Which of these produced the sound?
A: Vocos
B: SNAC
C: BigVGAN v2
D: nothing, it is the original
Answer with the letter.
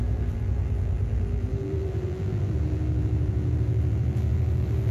C